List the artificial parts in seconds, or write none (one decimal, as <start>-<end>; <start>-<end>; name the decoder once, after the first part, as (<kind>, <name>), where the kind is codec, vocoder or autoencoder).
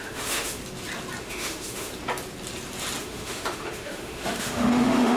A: 0.0-0.6 (autoencoder, DAC-VAE); 1.2-1.9; 3.0-5.2